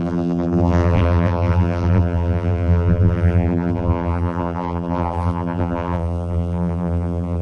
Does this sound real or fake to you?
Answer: fake